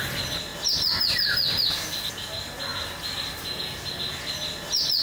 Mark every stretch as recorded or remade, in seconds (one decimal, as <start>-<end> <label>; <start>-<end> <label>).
0.0-5.0 recorded